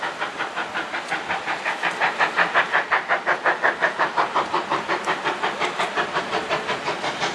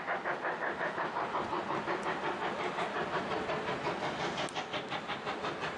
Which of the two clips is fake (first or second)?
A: first